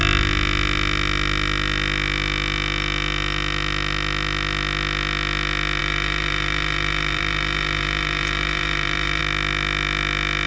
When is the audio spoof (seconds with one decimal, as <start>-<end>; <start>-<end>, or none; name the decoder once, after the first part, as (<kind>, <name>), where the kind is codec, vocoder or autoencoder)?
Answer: 5.8-9.2 (vocoder, BigVGAN v2)